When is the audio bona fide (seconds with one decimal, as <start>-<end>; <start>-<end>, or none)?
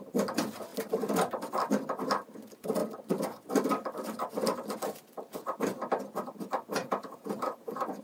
0.0-6.8